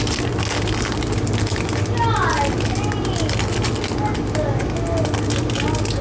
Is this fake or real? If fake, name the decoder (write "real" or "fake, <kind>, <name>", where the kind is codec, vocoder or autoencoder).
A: real